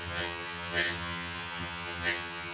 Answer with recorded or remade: remade